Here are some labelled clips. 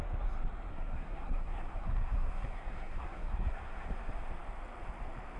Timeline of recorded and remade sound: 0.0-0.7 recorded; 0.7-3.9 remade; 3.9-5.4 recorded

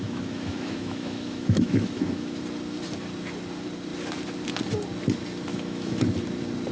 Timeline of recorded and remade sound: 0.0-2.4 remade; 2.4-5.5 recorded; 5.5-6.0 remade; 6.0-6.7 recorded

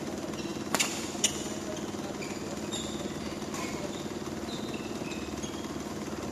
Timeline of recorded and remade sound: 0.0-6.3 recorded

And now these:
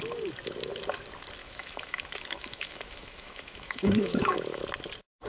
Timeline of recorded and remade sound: 0.0-1.4 recorded; 1.4-4.6 remade; 4.6-5.3 recorded

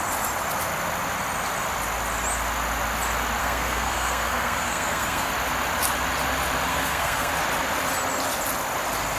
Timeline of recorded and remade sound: 0.0-3.4 recorded; 3.4-5.3 remade; 5.3-6.7 recorded; 6.7-7.3 remade; 7.3-9.2 recorded